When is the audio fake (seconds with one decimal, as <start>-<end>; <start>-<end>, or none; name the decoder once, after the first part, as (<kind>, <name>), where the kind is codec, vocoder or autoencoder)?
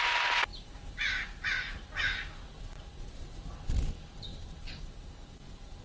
none